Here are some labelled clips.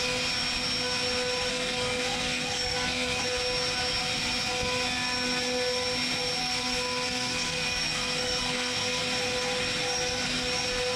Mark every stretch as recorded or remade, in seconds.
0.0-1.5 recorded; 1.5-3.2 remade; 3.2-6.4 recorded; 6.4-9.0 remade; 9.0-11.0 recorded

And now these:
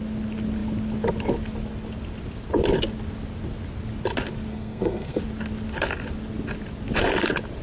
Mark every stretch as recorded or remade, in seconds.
0.0-4.5 recorded; 4.5-5.2 remade; 5.2-7.6 recorded

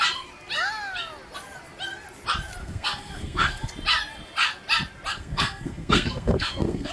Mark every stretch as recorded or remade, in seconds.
0.0-2.6 recorded; 2.6-3.7 remade; 3.7-5.1 recorded; 5.1-6.9 remade

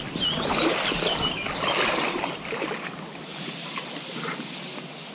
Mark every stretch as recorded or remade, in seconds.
0.0-5.1 recorded

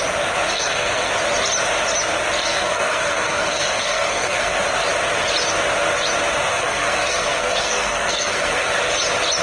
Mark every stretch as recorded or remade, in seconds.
0.0-0.5 recorded; 0.5-1.1 remade; 1.1-2.4 recorded; 2.4-4.6 remade; 4.6-6.5 recorded; 6.5-8.7 remade; 8.7-9.4 recorded